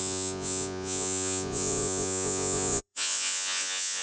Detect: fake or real fake